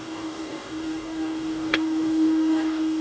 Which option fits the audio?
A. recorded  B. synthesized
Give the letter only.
B